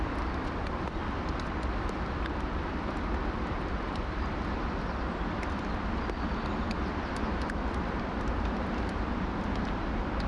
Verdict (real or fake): fake